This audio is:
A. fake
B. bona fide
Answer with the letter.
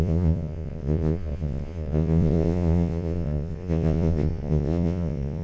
A